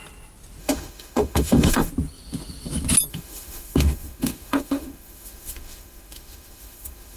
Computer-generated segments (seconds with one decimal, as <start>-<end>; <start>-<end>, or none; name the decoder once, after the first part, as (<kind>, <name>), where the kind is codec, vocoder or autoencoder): 0.6-1.9 (autoencoder, DAC-VAE); 3.1-7.2